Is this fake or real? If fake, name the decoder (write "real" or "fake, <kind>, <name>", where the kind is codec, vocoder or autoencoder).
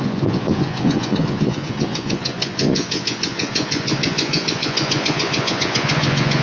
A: fake, vocoder, Vocos